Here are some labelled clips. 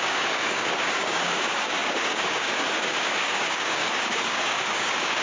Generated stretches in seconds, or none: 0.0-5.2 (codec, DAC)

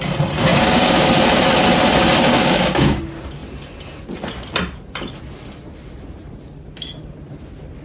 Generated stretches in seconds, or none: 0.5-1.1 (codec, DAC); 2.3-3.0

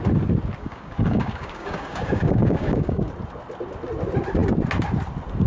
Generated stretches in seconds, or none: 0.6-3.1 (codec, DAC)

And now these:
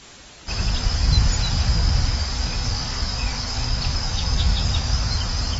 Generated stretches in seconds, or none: 1.6-5.0 (codec, DAC)